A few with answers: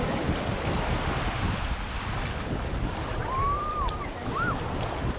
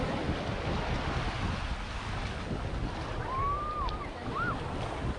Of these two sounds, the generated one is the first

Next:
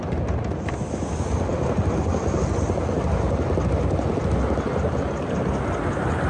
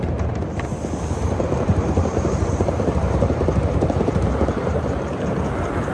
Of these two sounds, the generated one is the second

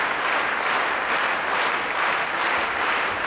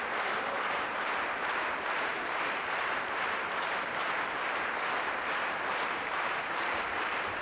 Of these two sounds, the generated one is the second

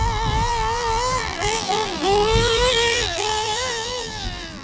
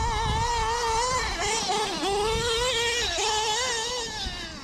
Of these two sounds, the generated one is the first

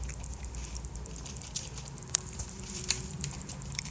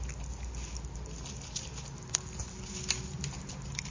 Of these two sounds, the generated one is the first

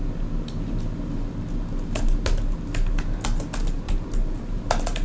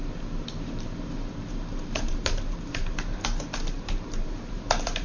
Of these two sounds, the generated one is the second